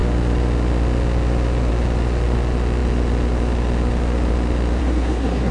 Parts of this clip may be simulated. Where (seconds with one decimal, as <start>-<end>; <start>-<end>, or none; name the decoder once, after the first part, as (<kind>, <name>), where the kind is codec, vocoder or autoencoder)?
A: 4.8-5.5 (codec, SNAC)